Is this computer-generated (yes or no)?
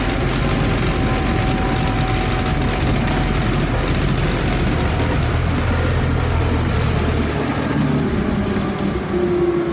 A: no